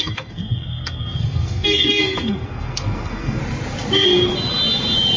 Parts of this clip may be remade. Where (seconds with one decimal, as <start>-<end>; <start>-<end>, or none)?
0.0-3.4